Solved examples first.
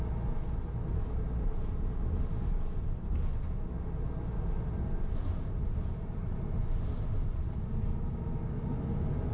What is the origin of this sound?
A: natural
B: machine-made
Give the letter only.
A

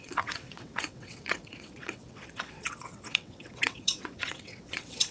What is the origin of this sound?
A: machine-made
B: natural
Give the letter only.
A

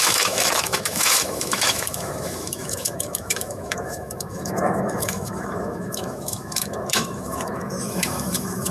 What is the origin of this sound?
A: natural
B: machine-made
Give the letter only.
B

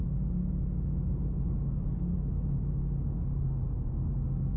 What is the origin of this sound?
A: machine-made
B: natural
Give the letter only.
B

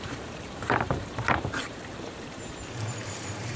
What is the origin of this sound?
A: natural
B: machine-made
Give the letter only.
B